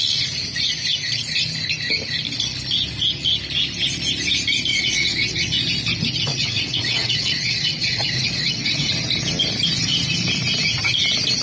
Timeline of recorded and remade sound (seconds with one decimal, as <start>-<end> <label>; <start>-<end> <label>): 0.0-4.7 recorded; 4.7-5.5 remade; 5.5-6.3 recorded; 6.3-8.9 remade; 8.9-11.4 recorded